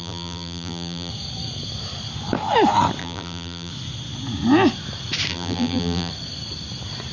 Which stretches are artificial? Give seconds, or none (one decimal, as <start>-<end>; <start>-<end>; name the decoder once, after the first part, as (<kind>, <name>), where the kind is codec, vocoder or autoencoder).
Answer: 0.0-1.1 (vocoder, BigVGAN v2); 3.0-3.7; 5.3-6.1